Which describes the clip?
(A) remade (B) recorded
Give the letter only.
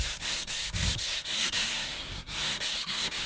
A